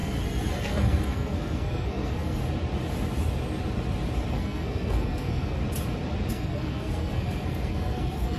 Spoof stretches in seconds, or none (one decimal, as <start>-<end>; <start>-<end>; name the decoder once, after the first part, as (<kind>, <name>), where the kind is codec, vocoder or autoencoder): 0.0-2.4 (codec, SNAC); 4.3-5.6; 6.3-8.4